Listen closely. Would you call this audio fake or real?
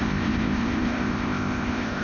fake